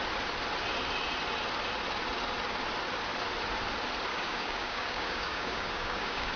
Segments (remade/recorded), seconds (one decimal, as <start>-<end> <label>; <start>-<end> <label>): 0.0-4.1 recorded; 4.1-6.4 remade